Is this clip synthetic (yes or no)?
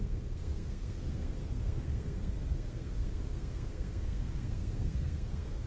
yes